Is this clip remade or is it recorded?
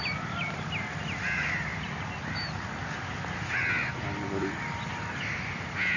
recorded